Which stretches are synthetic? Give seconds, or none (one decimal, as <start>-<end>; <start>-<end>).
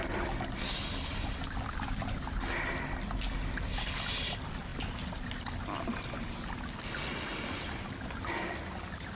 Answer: none